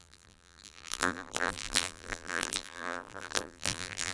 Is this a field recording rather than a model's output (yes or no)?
no